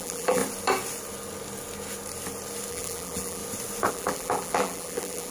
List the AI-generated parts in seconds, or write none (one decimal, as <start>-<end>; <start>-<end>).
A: 0.0-0.4; 2.7-3.4; 3.9-5.3